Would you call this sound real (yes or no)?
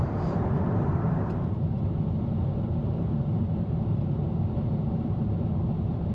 no